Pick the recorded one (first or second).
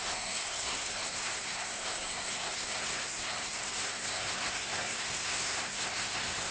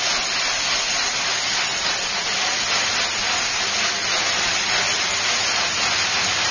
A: second